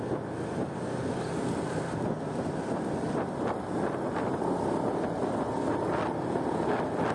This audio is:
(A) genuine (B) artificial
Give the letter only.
A